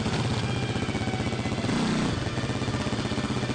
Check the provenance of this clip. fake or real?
real